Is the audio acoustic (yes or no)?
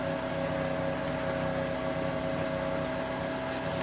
yes